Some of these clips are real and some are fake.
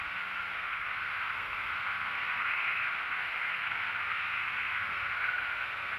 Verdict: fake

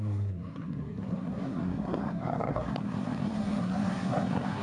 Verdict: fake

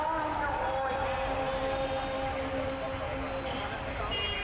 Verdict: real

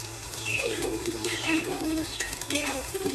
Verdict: fake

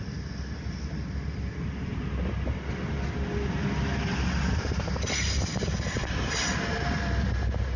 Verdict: real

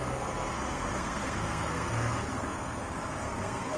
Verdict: fake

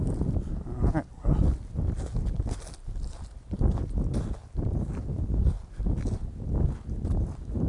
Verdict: real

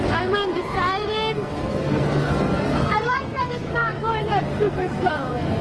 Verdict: fake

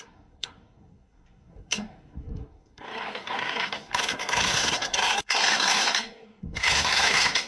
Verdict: fake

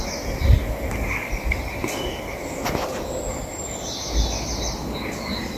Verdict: real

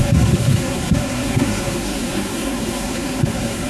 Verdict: fake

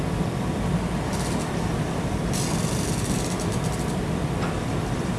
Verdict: real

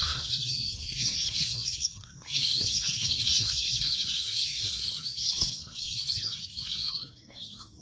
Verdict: fake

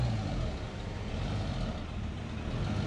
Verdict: real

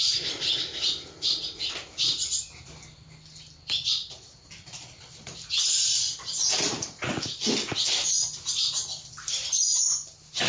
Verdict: real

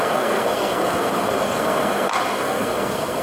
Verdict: fake